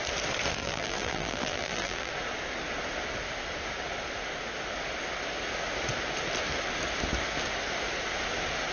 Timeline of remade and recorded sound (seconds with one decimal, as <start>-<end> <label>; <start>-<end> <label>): 0.0-0.6 recorded; 0.6-2.1 remade; 2.1-8.7 recorded